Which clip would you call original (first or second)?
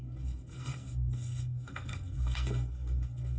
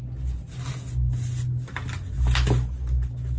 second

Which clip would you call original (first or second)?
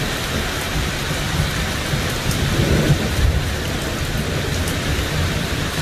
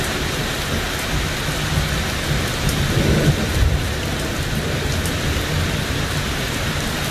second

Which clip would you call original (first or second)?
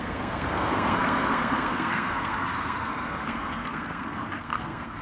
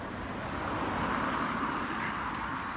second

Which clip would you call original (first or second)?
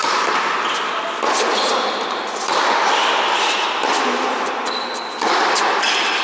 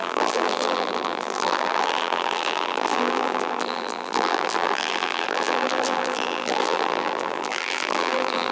first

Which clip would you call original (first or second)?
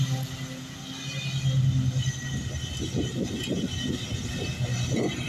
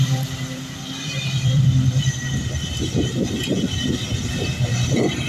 first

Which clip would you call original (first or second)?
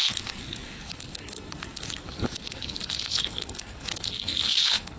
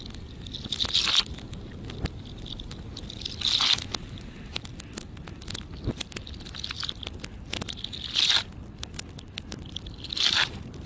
second